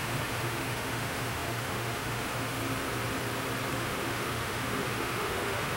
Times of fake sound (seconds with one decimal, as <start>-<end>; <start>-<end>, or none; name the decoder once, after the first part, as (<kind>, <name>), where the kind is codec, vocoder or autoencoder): 0.0-2.6 (autoencoder, DAC-VAE); 3.7-5.8